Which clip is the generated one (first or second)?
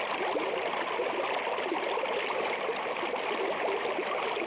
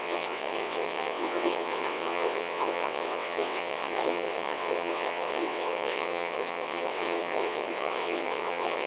second